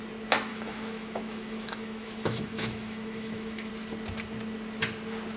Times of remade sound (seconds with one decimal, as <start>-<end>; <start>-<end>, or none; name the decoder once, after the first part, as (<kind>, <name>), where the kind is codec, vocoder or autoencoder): 0.5-3.7 (autoencoder, DAC-VAE)